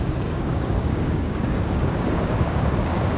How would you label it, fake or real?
fake